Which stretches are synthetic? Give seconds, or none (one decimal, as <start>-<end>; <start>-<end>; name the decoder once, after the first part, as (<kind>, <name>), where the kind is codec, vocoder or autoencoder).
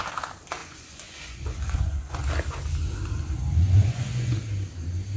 0.6-2.2 (vocoder, Vocos); 3.6-4.4